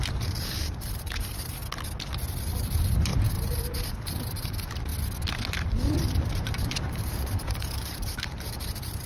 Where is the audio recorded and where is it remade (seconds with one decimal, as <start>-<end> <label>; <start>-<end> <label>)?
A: 0.0-1.6 remade; 1.6-2.4 recorded; 2.4-4.9 remade; 4.9-6.0 recorded; 6.0-9.1 remade